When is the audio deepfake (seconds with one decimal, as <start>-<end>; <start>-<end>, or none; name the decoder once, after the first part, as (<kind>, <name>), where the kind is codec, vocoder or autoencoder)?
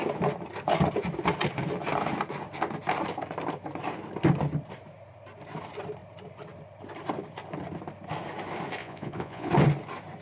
8.8-9.5 (vocoder, Vocos)